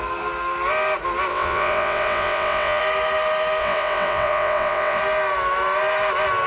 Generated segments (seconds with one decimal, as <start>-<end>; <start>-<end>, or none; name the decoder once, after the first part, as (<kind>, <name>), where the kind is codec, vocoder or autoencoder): 1.3-2.8 (vocoder, WaveNeXt); 3.6-5.0